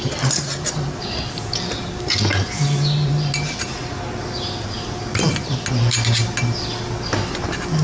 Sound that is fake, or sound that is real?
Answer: real